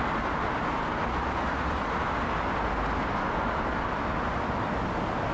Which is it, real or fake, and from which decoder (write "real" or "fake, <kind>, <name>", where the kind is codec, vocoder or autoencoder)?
real